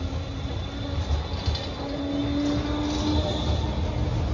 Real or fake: real